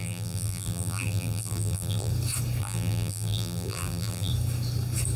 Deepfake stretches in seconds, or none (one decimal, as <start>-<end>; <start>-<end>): 0.0-2.1; 2.6-4.3